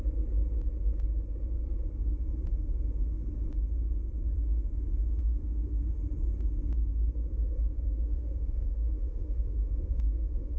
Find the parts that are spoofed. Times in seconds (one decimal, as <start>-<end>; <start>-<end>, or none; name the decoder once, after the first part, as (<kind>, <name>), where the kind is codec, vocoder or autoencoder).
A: 5.2-6.0 (autoencoder, DAC-VAE); 7.3-10.6